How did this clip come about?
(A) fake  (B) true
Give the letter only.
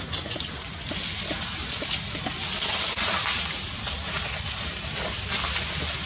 B